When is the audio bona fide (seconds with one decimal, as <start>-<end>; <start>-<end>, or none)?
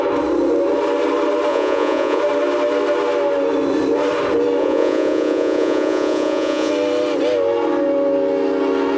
0.0-1.5; 2.2-4.6; 6.7-9.0